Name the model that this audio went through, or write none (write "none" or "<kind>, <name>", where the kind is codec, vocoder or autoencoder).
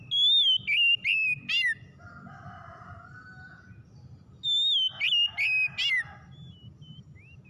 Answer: none